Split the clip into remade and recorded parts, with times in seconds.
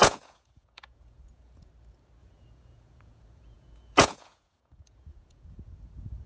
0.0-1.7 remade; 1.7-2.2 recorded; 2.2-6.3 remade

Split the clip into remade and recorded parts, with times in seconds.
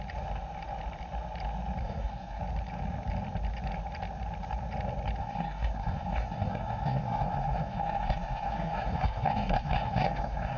0.0-1.8 recorded; 1.8-2.4 remade; 2.4-5.2 recorded; 5.2-10.6 remade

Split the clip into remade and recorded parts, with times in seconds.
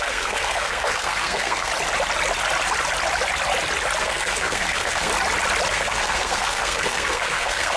0.0-1.7 remade; 1.7-4.0 recorded; 4.0-5.1 remade; 5.1-5.7 recorded; 5.7-7.8 remade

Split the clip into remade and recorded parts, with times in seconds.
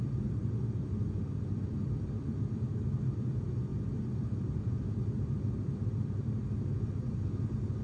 0.0-7.8 remade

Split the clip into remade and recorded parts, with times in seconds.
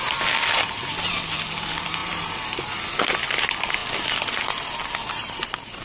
0.0-5.8 recorded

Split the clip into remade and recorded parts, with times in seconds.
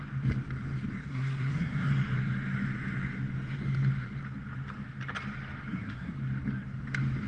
0.0-1.1 recorded; 1.1-1.9 remade; 1.9-5.7 recorded; 5.7-6.2 remade; 6.2-7.3 recorded